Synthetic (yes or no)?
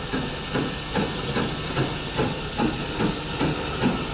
no